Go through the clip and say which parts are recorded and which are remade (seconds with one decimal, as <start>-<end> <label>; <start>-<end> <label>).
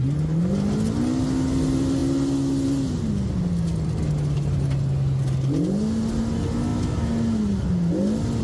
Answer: 0.0-8.4 recorded